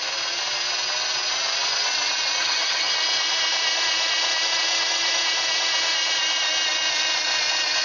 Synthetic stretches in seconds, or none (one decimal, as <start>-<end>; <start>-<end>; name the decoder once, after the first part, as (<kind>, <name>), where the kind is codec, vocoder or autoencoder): 2.4-2.9 (vocoder, HiFi-GAN)